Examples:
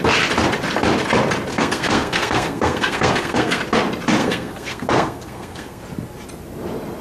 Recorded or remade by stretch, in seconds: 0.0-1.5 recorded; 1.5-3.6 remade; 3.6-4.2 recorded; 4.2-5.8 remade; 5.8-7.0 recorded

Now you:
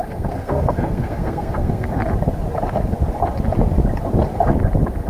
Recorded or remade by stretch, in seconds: 0.0-2.0 remade; 2.0-5.1 recorded

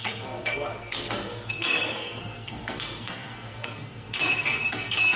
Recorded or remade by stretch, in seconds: 0.0-5.2 remade

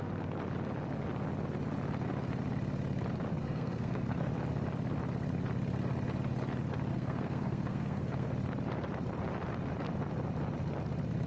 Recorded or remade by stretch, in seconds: 0.0-3.4 recorded; 3.4-4.3 remade; 4.3-6.9 recorded; 6.9-8.3 remade; 8.3-11.3 recorded

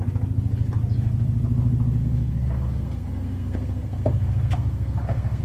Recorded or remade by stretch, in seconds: 0.0-2.0 recorded; 2.0-5.4 remade

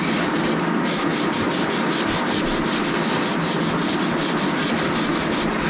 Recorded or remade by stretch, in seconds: 0.0-5.7 recorded

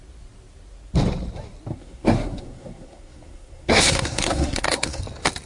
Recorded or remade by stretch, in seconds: 0.0-1.7 recorded; 1.7-5.0 remade; 5.0-5.5 recorded